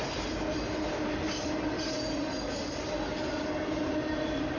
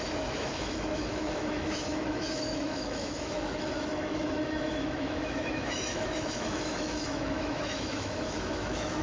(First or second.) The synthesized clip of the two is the second